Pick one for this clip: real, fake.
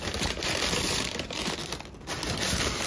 real